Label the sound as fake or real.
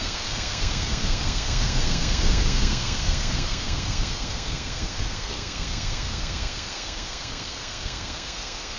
fake